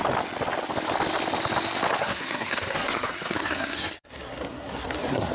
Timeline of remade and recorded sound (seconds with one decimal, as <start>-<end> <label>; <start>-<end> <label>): 0.0-2.0 recorded; 2.0-5.3 remade